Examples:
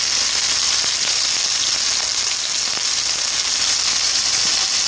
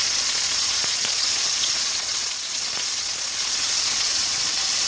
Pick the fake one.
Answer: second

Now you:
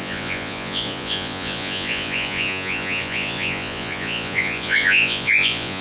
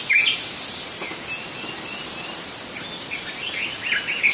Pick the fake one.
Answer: first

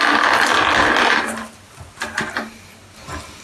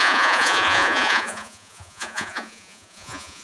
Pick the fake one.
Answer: second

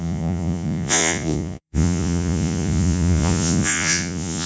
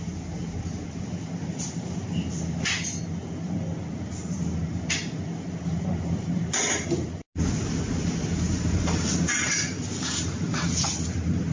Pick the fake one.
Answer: first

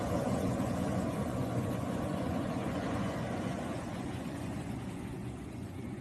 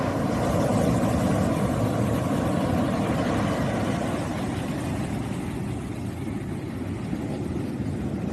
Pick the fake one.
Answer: first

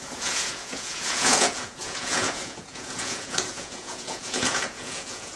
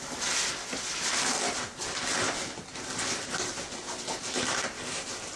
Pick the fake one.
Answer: first